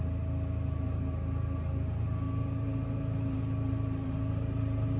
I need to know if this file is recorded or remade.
recorded